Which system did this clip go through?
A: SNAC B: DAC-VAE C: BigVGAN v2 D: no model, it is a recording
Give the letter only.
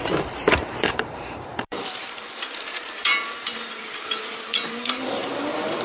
C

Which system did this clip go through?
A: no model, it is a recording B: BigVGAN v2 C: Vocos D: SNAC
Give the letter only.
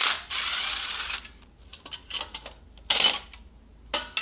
A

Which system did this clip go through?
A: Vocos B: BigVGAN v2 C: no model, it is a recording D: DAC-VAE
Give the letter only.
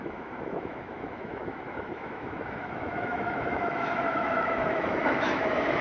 D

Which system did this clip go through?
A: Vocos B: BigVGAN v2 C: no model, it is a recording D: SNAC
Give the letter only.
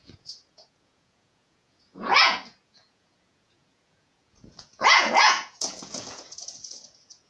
A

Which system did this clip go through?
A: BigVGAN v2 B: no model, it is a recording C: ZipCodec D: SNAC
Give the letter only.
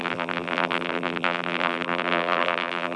A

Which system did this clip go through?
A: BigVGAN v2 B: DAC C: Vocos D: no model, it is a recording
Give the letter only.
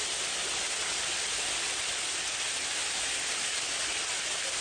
D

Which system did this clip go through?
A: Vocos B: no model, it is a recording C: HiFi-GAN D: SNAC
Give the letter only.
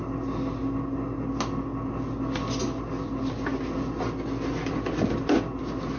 B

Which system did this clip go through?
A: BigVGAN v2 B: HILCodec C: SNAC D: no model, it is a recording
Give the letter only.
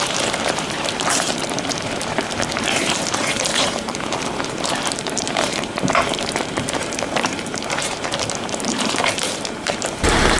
A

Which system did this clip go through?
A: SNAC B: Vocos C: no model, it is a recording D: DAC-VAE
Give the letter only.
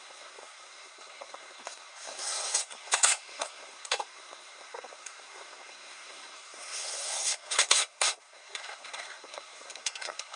A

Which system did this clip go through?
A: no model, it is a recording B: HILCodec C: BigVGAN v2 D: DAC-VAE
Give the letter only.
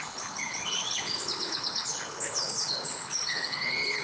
B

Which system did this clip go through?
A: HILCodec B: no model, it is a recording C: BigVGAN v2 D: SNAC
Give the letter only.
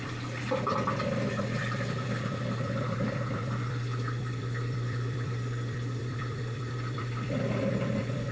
C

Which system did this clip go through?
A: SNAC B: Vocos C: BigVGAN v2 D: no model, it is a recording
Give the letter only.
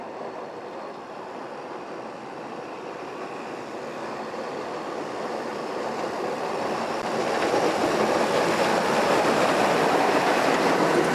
C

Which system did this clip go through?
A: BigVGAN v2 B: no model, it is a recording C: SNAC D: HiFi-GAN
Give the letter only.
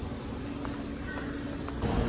B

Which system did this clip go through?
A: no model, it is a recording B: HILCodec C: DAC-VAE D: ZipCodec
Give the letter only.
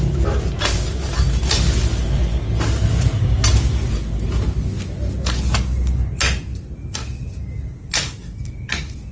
A